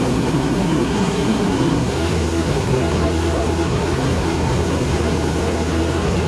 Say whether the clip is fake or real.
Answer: fake